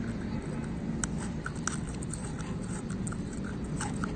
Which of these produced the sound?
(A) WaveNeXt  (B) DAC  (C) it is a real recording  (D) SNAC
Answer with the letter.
C